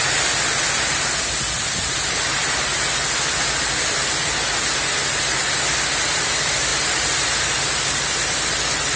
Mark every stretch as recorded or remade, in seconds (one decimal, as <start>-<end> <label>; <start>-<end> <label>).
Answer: 0.0-9.0 recorded